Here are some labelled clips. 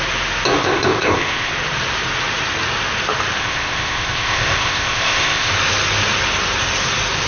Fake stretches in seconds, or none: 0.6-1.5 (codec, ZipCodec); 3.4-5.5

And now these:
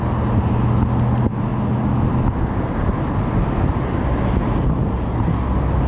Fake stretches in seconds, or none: none